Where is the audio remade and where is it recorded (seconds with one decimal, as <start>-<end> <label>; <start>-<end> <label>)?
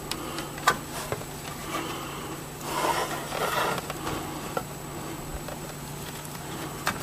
0.0-1.6 recorded; 1.6-2.6 remade; 2.6-3.0 recorded; 3.0-3.8 remade; 3.8-5.3 recorded; 5.3-7.0 remade